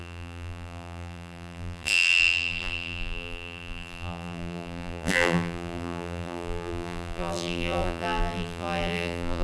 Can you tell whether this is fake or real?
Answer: fake